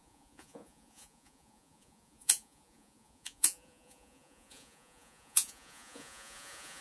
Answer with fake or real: fake